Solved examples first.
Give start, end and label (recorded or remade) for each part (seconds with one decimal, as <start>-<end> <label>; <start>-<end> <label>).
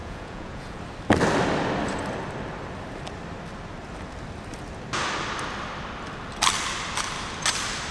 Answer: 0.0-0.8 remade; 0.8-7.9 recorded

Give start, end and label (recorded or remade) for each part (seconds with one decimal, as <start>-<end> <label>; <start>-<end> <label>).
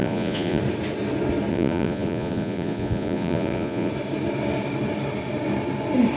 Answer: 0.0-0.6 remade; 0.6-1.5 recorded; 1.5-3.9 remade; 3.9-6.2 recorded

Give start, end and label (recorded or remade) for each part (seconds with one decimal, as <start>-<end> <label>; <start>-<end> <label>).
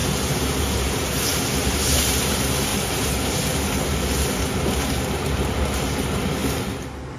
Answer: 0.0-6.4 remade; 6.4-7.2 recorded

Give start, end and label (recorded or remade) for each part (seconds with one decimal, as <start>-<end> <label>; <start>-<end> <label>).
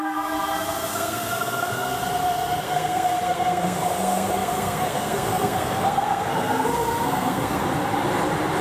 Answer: 0.0-1.9 remade; 1.9-2.6 recorded; 2.6-7.6 remade; 7.6-8.6 recorded